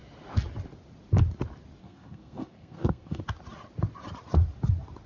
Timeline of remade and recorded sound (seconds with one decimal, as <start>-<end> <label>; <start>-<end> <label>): 0.0-1.8 recorded; 1.8-3.2 remade; 3.2-5.1 recorded